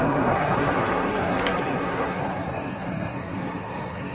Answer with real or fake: fake